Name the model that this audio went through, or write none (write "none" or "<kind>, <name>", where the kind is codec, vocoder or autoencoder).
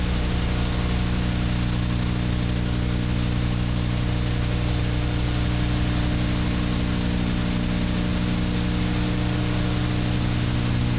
none